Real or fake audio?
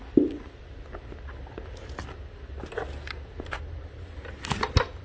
real